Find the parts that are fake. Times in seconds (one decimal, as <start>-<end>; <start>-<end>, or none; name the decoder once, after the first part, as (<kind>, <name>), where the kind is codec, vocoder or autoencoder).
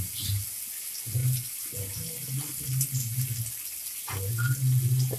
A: none